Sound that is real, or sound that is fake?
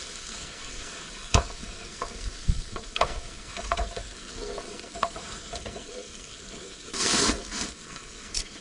fake